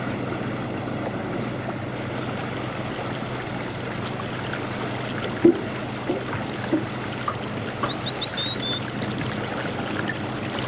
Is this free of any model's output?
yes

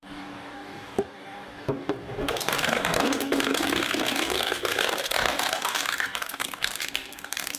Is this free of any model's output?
no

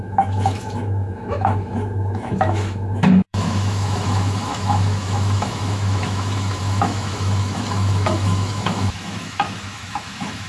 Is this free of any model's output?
no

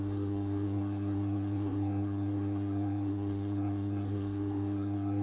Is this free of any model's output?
no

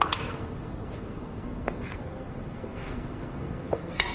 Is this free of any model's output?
no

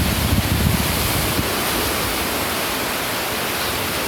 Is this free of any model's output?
yes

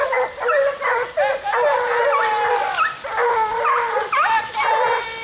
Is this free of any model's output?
yes